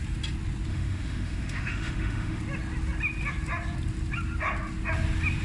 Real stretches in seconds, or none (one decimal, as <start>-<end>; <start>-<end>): 0.0-0.7; 2.4-5.4